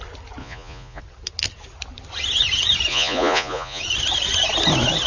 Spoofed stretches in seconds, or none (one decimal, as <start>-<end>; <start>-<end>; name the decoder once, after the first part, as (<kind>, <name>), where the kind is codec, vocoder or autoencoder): 0.4-1.0 (vocoder, Vocos); 2.9-3.8